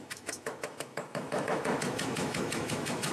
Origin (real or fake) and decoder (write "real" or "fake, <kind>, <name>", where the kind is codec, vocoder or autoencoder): fake, autoencoder, DAC-VAE